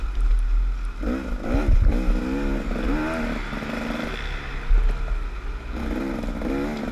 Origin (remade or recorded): recorded